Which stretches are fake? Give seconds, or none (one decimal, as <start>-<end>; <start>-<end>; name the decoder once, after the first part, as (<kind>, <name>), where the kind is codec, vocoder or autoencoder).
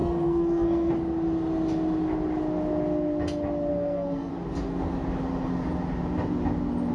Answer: 0.0-0.9 (codec, SNAC); 3.7-4.3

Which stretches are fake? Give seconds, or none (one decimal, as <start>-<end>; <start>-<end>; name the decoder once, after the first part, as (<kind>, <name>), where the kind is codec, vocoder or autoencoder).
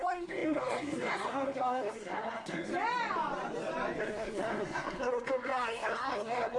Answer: 0.0-2.7 (codec, SNAC); 4.0-6.6